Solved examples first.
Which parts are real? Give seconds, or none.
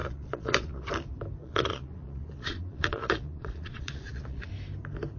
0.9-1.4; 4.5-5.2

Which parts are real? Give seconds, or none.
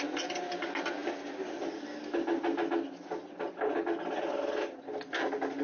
0.0-5.6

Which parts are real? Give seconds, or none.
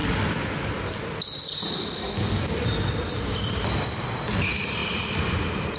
0.0-5.8